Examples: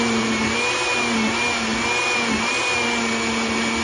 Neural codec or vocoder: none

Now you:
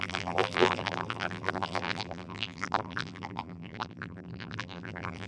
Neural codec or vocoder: vocoder, BigVGAN v2